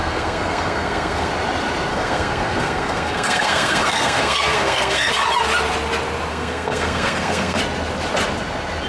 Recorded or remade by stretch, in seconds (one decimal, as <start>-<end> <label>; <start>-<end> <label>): 0.0-1.3 remade; 1.3-1.9 recorded; 1.9-5.1 remade; 5.1-6.3 recorded; 6.3-7.6 remade; 7.6-8.9 recorded